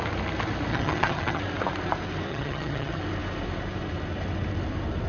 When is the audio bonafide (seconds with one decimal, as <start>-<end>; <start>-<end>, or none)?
0.0-0.7; 1.4-2.3; 3.0-5.1